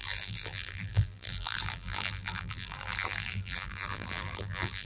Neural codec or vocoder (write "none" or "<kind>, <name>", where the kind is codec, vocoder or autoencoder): vocoder, BigVGAN v2